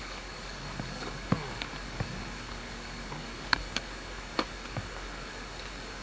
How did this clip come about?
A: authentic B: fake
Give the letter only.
B